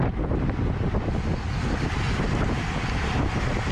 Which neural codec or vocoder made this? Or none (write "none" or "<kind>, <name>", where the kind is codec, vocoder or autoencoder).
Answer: none